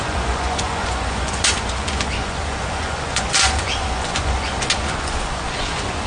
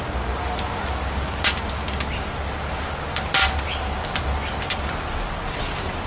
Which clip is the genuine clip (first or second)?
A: second